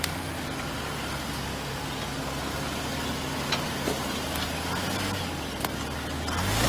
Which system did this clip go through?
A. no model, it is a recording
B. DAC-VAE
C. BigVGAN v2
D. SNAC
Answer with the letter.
A